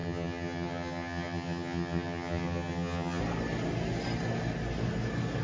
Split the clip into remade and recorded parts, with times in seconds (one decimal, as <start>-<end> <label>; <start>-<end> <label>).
0.0-3.2 remade; 3.2-5.4 recorded